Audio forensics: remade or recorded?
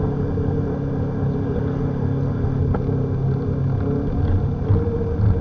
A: recorded